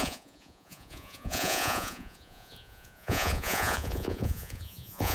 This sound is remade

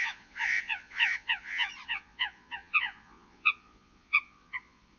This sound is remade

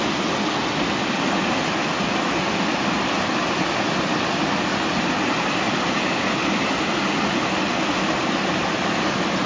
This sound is recorded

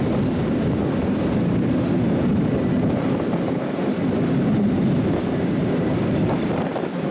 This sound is recorded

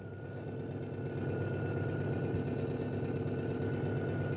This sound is recorded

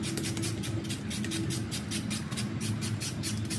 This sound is recorded